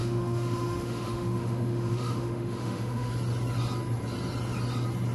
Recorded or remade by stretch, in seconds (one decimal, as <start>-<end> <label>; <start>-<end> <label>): 0.0-3.1 remade; 3.1-5.1 recorded